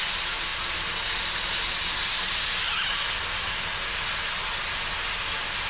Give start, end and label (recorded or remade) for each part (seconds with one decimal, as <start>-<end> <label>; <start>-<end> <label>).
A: 0.0-5.7 recorded